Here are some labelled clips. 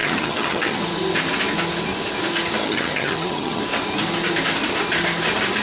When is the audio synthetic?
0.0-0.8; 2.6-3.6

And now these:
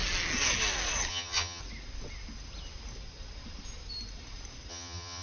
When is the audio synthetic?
1.1-1.6; 4.7-5.2